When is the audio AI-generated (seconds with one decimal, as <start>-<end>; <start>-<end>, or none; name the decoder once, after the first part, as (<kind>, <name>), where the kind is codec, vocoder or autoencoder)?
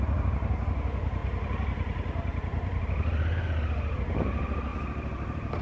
1.2-2.8 (vocoder, BigVGAN v2); 4.7-5.6